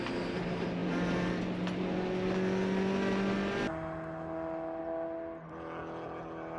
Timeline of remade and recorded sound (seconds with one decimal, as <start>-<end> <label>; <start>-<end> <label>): 0.0-6.6 recorded